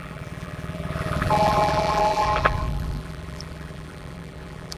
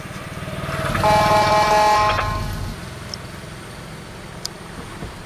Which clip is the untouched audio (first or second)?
second